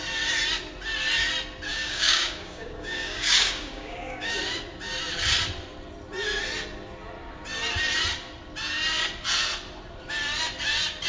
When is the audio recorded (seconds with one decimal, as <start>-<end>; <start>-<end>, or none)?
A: 0.0-1.7; 4.4-11.1